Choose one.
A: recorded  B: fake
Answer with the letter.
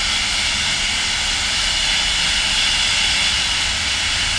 A